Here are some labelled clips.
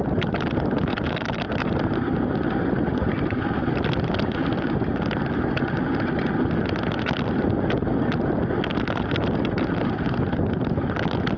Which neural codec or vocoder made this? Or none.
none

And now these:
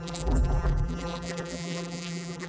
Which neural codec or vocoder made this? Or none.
vocoder, BigVGAN v2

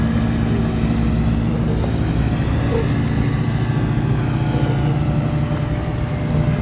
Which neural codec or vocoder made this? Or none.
none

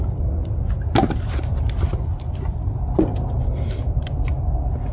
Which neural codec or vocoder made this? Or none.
none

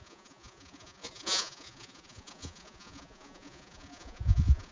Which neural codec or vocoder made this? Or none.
vocoder, Vocos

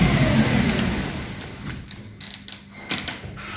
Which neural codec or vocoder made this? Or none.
none